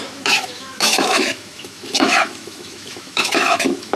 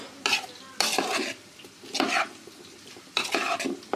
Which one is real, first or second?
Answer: second